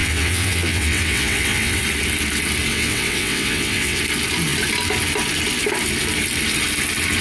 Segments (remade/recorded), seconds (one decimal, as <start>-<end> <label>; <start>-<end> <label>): 0.0-1.8 remade; 1.8-2.7 recorded; 2.7-4.0 remade; 4.0-7.2 recorded